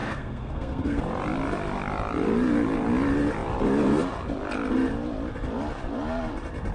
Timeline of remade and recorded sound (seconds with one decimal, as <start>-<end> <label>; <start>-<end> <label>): 0.0-1.0 remade; 1.0-6.7 recorded

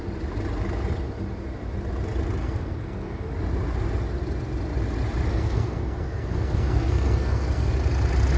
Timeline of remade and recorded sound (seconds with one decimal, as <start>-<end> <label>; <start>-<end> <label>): 0.0-2.4 recorded; 2.4-3.3 remade; 3.3-5.3 recorded; 5.3-7.7 remade; 7.7-8.4 recorded

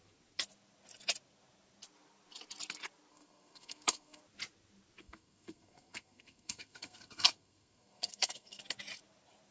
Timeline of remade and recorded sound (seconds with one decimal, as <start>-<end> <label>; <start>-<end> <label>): 0.0-3.1 recorded; 3.1-4.2 remade; 4.2-5.0 recorded; 5.0-8.6 remade; 8.6-9.5 recorded

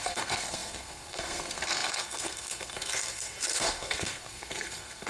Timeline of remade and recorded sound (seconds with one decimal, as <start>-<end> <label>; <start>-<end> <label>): 0.0-5.1 remade

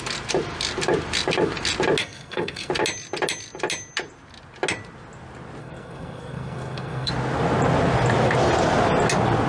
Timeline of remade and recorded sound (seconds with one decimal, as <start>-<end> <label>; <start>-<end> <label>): 0.0-2.0 recorded; 2.0-2.7 remade; 2.7-5.6 recorded; 5.6-7.1 remade; 7.1-9.5 recorded

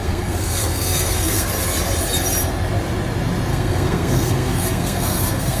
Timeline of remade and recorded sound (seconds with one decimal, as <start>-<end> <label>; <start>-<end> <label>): 0.0-1.5 remade; 1.5-3.5 recorded; 3.5-5.6 remade

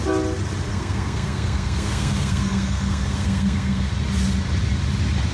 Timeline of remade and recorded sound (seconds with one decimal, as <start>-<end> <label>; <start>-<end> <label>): 0.0-0.7 recorded; 0.7-3.9 remade; 3.9-5.3 recorded